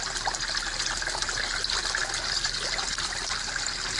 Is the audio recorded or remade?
recorded